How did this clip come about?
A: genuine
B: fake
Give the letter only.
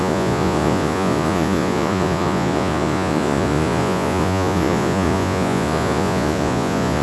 B